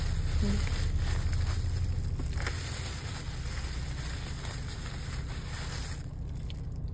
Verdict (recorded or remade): recorded